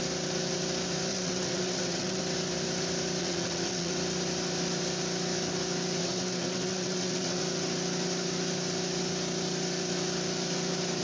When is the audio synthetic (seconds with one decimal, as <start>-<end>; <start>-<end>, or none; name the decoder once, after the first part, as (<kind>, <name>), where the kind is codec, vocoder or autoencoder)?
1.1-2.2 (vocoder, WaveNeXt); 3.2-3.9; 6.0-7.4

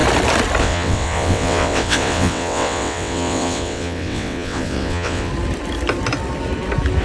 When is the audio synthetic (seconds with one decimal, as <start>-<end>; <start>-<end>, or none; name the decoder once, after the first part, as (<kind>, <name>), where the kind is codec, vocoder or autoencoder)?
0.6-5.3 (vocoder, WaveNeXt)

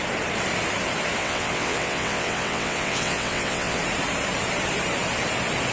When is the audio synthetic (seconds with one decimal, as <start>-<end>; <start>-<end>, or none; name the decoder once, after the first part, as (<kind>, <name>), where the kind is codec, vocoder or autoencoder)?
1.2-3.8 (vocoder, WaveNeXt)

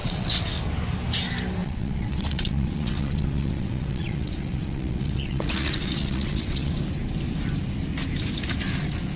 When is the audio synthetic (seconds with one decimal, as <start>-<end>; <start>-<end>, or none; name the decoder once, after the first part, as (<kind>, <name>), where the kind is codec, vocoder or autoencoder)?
0.0-0.6 (vocoder, WaveNeXt); 1.6-6.7